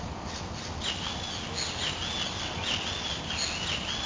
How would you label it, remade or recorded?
recorded